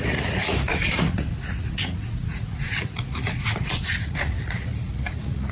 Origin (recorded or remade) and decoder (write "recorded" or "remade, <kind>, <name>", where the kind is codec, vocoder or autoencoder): remade, vocoder, Vocos